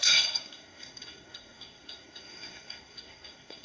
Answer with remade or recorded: remade